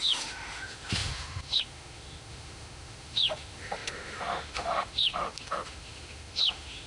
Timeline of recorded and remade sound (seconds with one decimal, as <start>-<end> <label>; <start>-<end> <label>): 0.0-6.9 remade